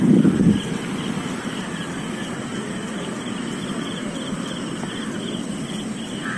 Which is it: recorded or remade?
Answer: recorded